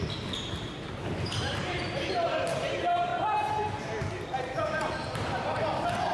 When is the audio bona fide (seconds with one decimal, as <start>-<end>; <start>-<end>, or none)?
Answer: 3.1-4.9

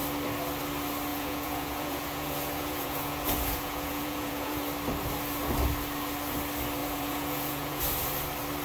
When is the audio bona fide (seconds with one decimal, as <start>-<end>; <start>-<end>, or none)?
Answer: 0.0-1.1; 4.6-6.8; 7.8-8.6

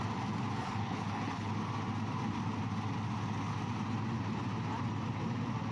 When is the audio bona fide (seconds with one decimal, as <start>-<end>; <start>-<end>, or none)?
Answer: 0.0-0.6; 1.5-5.7

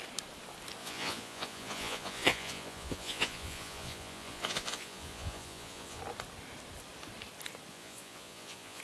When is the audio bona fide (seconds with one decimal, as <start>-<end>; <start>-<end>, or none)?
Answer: 0.0-0.8; 6.0-7.7

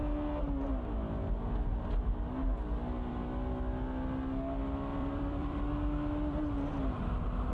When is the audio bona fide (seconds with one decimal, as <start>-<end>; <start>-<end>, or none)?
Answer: 0.0-5.0; 5.7-7.5

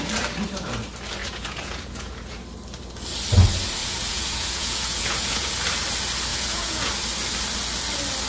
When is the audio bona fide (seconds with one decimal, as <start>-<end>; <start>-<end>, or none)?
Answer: 0.0-1.2; 2.4-3.8; 5.5-6.3; 6.9-8.3

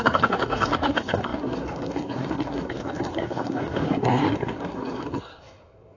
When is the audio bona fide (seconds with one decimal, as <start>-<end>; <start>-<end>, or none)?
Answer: none

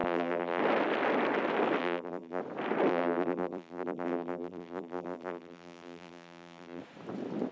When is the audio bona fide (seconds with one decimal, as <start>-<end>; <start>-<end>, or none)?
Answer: 0.6-1.8; 2.4-2.9; 6.8-7.5